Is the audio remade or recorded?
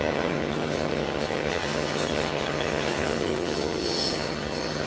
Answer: remade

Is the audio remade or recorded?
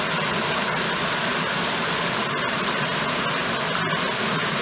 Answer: recorded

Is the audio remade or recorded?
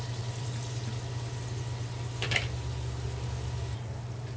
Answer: recorded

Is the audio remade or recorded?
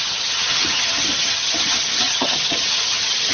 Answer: remade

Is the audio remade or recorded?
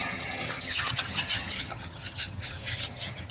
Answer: remade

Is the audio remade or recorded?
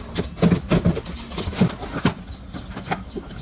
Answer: recorded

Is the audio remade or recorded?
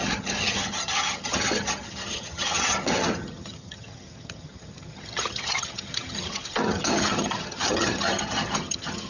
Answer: remade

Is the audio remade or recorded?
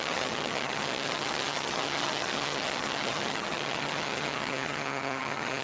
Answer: remade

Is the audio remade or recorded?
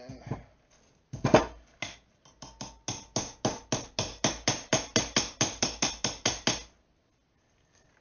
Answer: recorded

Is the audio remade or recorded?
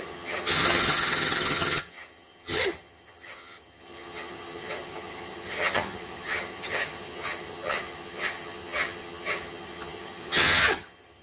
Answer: remade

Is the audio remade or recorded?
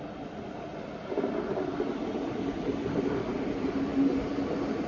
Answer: recorded